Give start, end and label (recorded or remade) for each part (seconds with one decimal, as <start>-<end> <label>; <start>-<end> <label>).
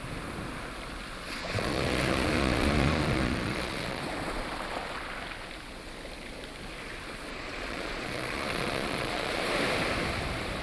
0.0-1.4 recorded; 1.4-4.0 remade; 4.0-7.3 recorded; 7.3-9.4 remade; 9.4-10.6 recorded